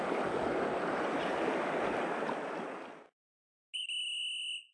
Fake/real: real